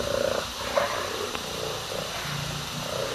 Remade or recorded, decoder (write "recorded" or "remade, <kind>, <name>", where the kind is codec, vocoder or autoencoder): recorded